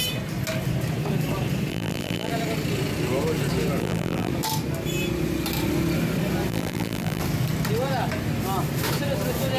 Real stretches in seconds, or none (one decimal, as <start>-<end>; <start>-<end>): 0.0-1.7; 2.3-3.8; 4.3-6.5; 7.2-9.6